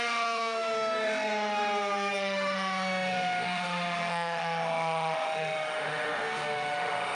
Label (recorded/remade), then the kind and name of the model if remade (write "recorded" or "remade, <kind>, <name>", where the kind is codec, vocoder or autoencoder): remade, autoencoder, DAC-VAE